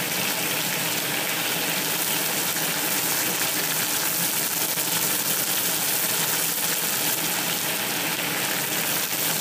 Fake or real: real